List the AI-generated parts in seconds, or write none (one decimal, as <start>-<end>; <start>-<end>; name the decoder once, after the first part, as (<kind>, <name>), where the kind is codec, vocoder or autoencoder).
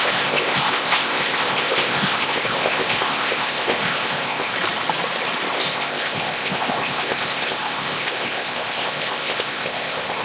0.0-4.5 (codec, ZipCodec); 5.5-10.2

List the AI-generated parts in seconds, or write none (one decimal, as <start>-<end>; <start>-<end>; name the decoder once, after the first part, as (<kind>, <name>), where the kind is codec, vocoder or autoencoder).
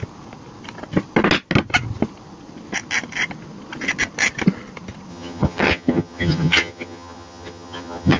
5.1-8.2 (vocoder, HiFi-GAN)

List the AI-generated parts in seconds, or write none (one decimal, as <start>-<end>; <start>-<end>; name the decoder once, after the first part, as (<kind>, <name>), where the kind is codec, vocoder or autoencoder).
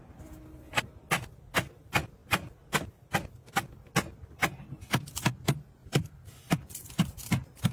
none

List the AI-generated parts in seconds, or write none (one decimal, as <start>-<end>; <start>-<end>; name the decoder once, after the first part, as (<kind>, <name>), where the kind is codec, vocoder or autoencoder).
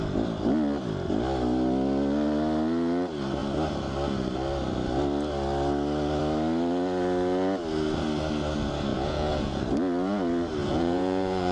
8.9-9.6 (vocoder, Vocos); 10.6-11.5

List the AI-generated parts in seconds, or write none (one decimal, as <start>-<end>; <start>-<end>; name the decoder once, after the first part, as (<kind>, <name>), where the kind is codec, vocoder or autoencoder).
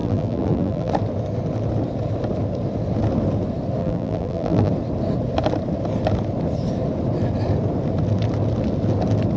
0.0-0.9 (vocoder, BigVGAN v2); 3.8-4.7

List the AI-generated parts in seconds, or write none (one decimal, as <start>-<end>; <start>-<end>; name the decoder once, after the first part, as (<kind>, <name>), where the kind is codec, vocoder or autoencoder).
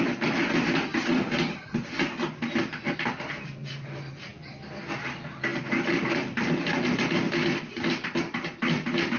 0.9-3.1 (vocoder, BigVGAN v2)